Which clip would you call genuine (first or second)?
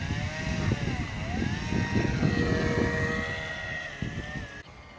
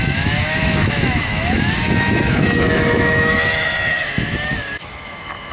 first